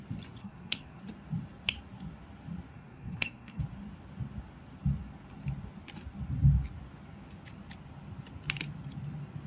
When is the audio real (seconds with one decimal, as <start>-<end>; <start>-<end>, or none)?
0.0-0.4; 1.0-2.7; 3.6-9.5